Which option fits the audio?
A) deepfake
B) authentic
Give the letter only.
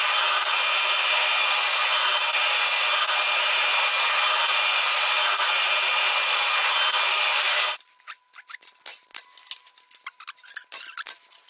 B